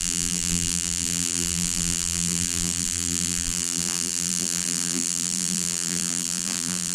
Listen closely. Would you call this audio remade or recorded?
remade